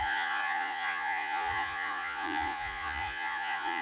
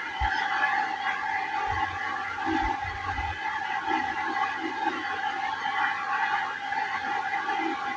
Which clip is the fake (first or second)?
first